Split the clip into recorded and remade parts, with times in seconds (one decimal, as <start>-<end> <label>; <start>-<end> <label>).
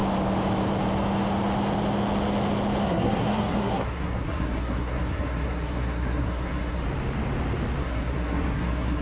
0.0-2.8 recorded; 2.8-6.8 remade; 6.8-7.8 recorded; 7.8-9.0 remade